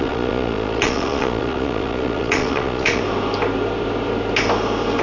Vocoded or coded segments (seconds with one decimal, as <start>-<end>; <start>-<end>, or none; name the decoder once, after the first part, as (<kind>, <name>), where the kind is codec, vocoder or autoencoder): 0.0-3.0 (vocoder, Vocos)